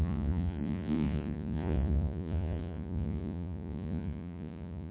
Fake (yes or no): yes